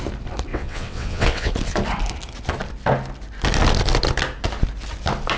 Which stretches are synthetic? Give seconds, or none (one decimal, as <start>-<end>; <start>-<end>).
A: 0.5-1.5